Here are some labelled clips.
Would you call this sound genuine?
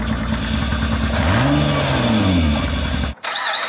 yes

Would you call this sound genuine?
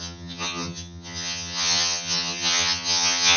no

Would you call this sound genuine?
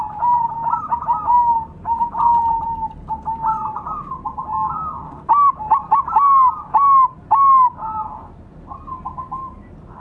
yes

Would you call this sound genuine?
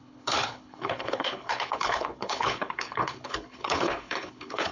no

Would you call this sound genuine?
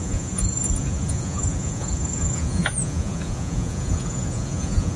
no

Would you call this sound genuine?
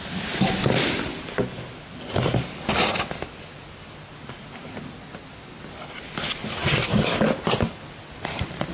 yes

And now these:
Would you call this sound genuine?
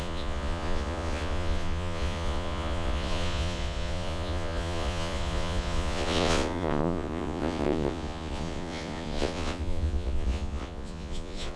no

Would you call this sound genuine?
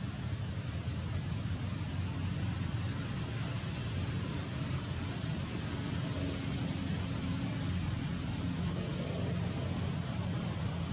yes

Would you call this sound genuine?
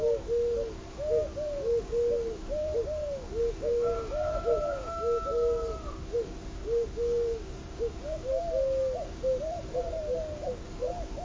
no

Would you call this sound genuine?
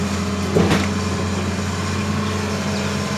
yes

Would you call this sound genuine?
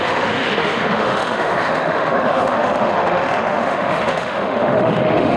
no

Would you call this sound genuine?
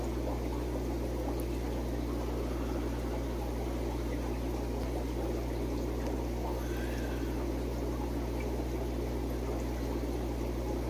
yes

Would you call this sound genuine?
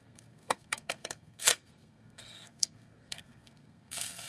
no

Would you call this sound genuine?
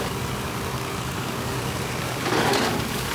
no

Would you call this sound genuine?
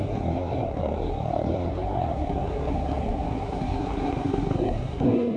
no